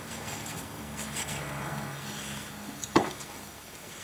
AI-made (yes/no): yes